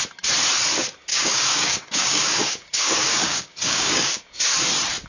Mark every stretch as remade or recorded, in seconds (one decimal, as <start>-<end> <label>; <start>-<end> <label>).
0.0-1.1 recorded; 1.1-4.2 remade; 4.2-5.1 recorded